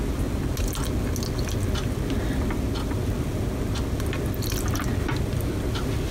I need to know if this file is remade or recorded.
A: recorded